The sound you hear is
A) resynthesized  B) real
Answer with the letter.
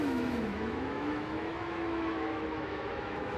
A